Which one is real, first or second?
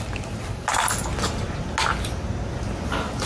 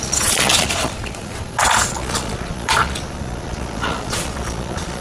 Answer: first